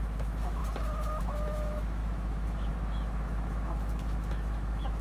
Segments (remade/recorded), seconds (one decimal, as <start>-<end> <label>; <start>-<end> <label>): 0.0-0.6 remade; 0.6-1.2 recorded; 1.2-5.0 remade